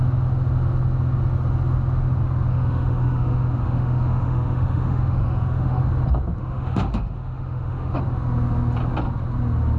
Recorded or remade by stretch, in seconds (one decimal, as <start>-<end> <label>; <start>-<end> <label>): 0.0-2.5 recorded; 2.5-5.8 remade; 5.8-6.4 recorded; 6.4-8.0 remade; 8.0-9.8 recorded